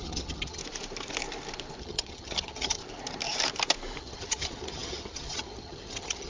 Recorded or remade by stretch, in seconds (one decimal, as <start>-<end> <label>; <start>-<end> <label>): 0.0-0.6 remade; 0.6-1.8 recorded; 1.8-2.8 remade; 2.8-4.0 recorded; 4.0-6.3 remade